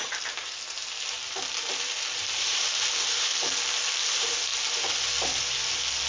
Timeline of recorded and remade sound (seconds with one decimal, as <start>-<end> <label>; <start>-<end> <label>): 0.0-0.8 remade; 0.8-2.3 recorded; 2.3-3.3 remade; 3.3-3.9 recorded; 3.9-4.5 remade; 4.5-6.1 recorded